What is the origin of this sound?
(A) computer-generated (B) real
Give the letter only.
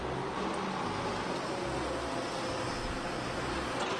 B